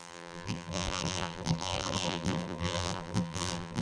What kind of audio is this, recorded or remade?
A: remade